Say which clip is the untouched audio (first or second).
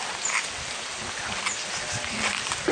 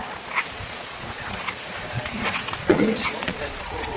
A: first